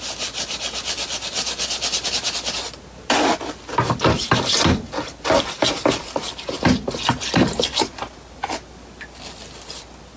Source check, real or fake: real